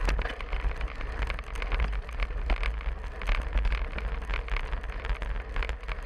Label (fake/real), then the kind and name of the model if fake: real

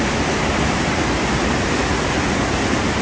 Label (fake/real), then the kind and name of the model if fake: real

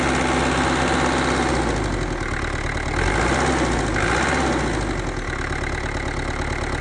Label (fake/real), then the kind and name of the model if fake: real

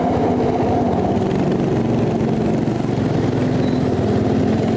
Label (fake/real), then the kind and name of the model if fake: real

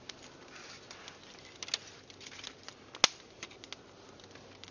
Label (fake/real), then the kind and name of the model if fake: real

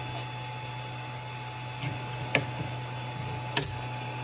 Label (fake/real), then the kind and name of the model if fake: real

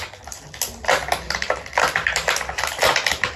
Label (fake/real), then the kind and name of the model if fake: real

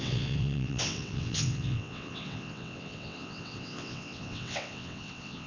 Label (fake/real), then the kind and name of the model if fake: fake, vocoder, WaveNeXt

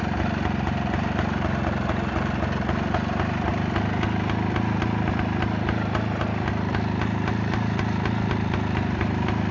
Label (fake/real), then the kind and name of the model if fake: real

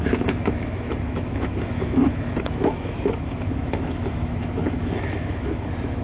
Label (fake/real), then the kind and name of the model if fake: fake, autoencoder, DAC-VAE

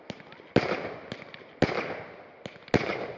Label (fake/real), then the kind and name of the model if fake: real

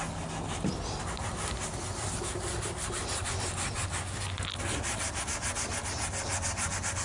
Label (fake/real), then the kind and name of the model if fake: real